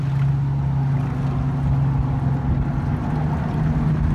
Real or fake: real